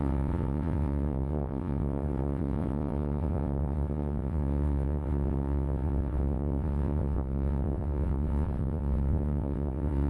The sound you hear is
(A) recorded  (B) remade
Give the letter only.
B